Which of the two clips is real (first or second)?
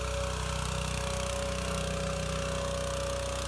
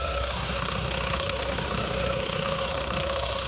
first